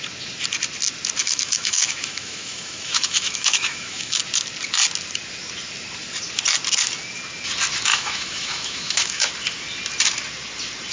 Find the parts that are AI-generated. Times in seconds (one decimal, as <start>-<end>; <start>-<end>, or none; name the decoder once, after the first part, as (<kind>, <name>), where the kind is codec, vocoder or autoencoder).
1.2-4.2 (autoencoder, DAC-VAE); 7.9-9.3